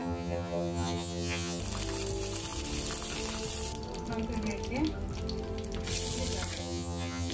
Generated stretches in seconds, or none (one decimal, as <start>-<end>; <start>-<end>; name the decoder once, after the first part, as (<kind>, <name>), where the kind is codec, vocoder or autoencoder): 0.0-1.6 (vocoder, HiFi-GAN); 6.6-7.3